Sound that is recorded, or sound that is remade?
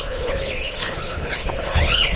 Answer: remade